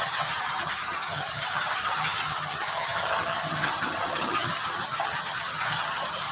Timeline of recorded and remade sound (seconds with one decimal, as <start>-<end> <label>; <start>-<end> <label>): 0.0-6.3 remade